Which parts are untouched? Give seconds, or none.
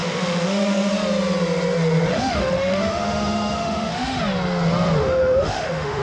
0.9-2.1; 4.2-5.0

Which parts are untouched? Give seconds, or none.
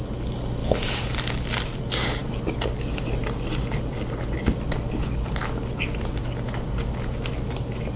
0.0-8.0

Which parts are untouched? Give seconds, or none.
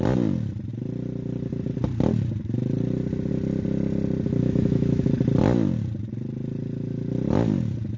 0.0-4.4; 5.1-8.0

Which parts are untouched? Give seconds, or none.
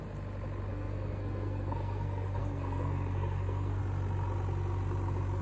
0.0-0.7; 3.8-5.4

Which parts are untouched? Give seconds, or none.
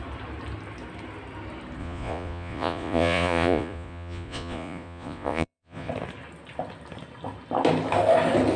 0.0-1.8; 5.9-8.6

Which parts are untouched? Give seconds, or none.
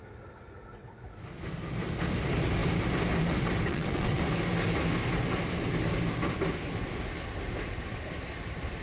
0.0-3.7; 4.2-8.8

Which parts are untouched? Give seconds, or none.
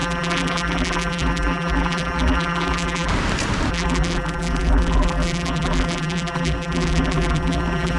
3.1-3.7